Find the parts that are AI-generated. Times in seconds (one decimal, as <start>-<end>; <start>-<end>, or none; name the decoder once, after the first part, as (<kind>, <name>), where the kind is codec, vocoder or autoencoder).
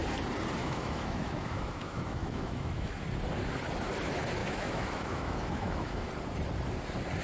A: 0.6-3.0 (autoencoder, DAC-VAE); 4.4-6.1